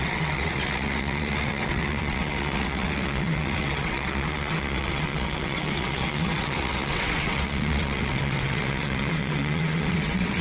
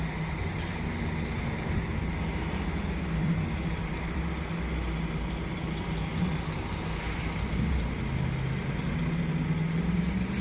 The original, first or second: second